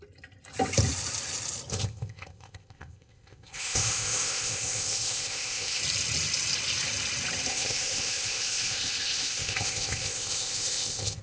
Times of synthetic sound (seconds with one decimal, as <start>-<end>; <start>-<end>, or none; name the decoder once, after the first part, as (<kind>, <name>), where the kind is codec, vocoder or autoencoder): 1.7-5.8 (codec, ZipCodec); 7.5-11.2